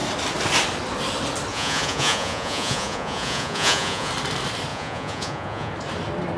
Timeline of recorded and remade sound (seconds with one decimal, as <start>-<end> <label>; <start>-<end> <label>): 0.0-1.5 recorded; 1.5-4.1 remade; 4.1-4.7 recorded; 4.7-5.7 remade; 5.7-6.4 recorded